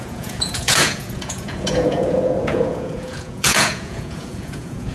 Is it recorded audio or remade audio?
remade